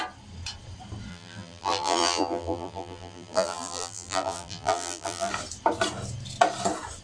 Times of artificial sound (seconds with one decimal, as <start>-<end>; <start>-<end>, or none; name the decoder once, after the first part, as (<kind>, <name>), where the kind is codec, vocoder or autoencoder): 1.1-5.3 (vocoder, BigVGAN v2)